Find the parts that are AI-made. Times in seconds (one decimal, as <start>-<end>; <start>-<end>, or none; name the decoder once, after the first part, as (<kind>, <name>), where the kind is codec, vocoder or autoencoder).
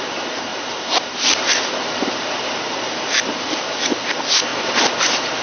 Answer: 0.0-4.5 (vocoder, BigVGAN v2); 5.0-5.4